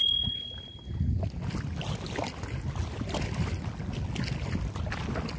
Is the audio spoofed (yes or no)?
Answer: no